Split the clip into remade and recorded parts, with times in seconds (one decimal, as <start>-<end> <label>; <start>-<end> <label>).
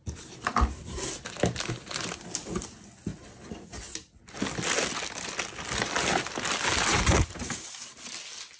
0.0-6.9 recorded; 6.9-8.1 remade; 8.1-8.6 recorded